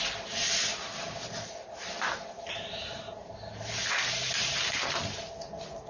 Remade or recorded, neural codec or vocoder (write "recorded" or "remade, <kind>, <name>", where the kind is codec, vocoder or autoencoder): recorded